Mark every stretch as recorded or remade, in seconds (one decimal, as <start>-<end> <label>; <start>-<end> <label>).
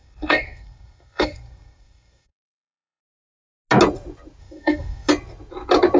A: 0.0-3.0 remade; 3.0-4.4 recorded; 4.4-5.1 remade; 5.1-6.0 recorded